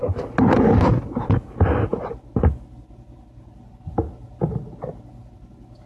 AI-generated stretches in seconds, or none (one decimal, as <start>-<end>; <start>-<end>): none